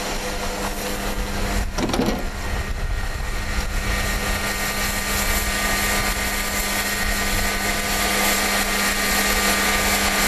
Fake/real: real